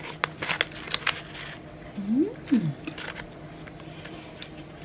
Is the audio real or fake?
real